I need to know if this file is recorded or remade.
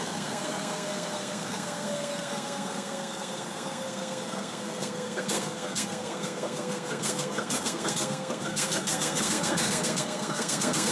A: remade